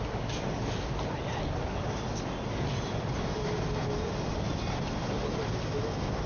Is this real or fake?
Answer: real